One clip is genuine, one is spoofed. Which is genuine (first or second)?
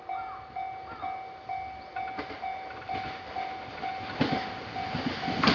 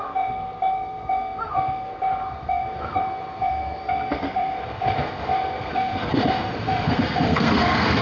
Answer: first